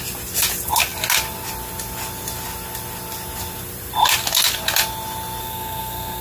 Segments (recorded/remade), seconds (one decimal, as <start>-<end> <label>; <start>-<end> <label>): 0.0-5.4 recorded; 5.4-6.2 remade